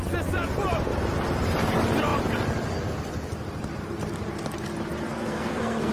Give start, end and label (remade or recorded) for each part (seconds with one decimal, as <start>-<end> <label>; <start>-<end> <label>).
0.0-5.1 recorded; 5.1-5.9 remade

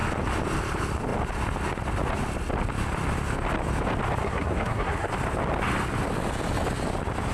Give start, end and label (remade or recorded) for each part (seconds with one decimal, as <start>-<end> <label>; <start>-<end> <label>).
0.0-4.2 recorded; 4.2-5.1 remade; 5.1-7.3 recorded

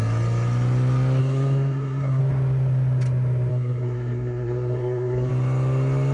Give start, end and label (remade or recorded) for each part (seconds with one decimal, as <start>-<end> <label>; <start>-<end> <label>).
0.0-1.2 recorded; 1.2-2.2 remade; 2.2-3.5 recorded; 3.5-5.3 remade; 5.3-6.1 recorded

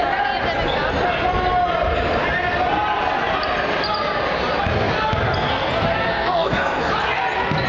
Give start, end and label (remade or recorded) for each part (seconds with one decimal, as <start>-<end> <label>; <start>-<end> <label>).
0.0-6.1 recorded; 6.1-6.9 remade; 6.9-7.7 recorded

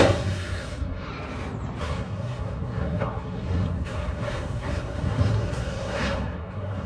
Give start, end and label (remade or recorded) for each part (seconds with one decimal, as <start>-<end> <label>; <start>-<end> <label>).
0.0-1.1 remade; 1.1-1.8 recorded; 1.8-6.9 remade